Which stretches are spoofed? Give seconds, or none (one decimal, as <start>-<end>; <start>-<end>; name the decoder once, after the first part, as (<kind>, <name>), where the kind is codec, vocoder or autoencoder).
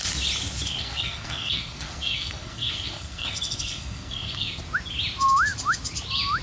0.8-4.6 (codec, SNAC)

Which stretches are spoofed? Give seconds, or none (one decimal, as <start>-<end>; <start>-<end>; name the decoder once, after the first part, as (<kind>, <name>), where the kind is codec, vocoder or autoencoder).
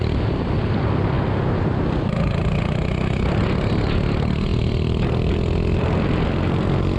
none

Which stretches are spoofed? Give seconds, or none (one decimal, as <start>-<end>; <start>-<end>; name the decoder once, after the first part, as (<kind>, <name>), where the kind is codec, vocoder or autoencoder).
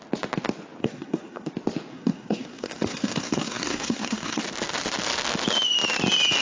0.8-1.5 (codec, SNAC); 1.9-4.4